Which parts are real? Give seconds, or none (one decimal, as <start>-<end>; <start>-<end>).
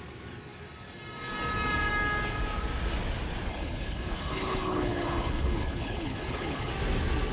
0.0-3.5; 6.7-7.3